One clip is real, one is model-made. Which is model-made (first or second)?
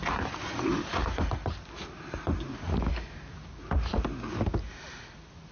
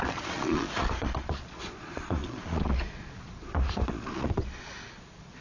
second